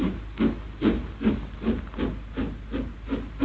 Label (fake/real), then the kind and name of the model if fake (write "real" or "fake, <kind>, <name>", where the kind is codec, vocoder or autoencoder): real